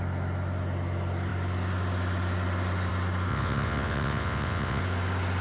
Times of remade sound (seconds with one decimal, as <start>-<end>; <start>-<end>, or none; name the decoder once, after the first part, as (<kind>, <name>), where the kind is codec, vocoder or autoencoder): 3.3-4.8 (vocoder, WaveNeXt)